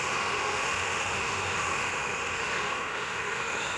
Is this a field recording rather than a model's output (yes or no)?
no